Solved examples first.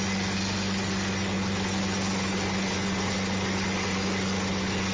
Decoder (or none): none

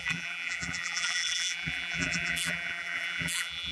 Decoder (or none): vocoder, BigVGAN v2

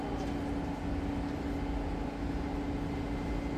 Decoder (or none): none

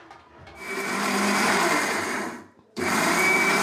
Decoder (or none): vocoder, BigVGAN v2